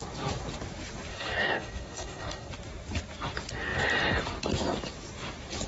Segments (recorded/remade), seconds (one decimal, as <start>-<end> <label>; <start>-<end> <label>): 0.0-1.1 recorded; 1.1-2.5 remade; 2.5-5.7 recorded